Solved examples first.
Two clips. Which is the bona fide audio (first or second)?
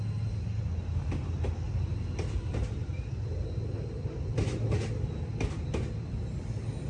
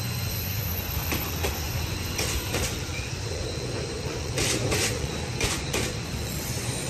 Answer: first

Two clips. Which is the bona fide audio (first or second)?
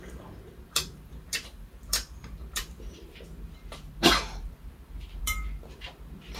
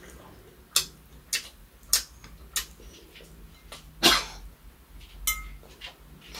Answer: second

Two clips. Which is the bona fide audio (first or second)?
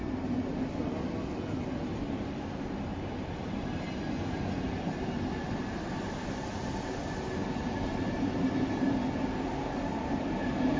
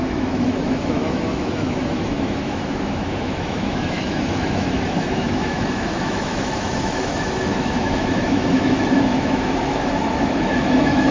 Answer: first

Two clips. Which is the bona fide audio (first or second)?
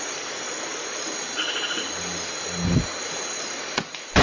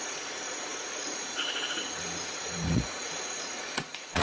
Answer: first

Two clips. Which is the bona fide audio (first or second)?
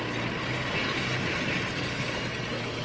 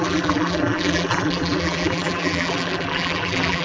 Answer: first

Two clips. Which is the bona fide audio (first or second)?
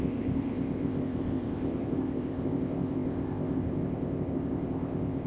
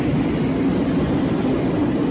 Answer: second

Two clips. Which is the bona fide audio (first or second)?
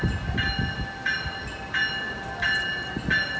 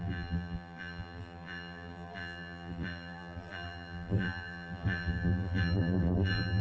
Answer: first